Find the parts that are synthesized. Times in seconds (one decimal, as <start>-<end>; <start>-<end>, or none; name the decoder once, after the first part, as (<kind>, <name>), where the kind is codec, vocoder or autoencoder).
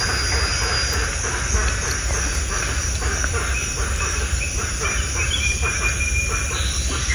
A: 3.6-6.0 (vocoder, BigVGAN v2)